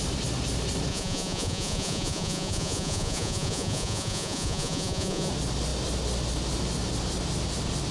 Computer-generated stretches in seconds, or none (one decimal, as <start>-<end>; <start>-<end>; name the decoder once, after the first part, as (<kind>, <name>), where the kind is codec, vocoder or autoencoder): 0.9-5.3 (vocoder, Vocos)